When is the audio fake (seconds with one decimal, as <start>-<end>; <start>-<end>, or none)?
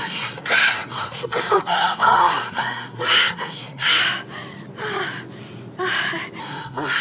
0.0-4.0; 6.4-7.0